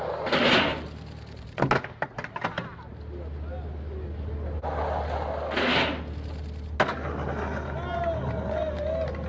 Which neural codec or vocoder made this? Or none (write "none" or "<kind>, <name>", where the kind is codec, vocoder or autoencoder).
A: none